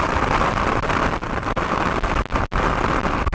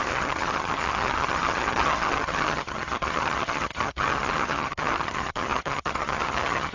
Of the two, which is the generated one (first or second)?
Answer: second